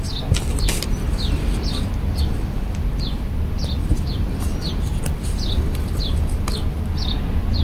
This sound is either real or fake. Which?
real